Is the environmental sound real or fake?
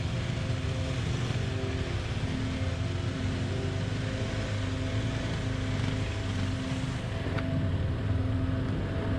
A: real